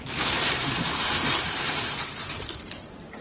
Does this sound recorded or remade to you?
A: remade